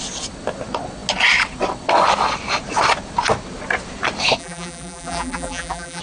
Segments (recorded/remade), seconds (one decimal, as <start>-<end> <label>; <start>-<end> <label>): 0.0-4.4 recorded; 4.4-6.0 remade